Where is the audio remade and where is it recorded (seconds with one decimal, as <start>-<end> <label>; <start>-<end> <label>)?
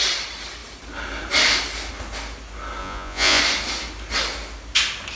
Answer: 0.0-2.8 recorded; 2.8-3.4 remade; 3.4-5.2 recorded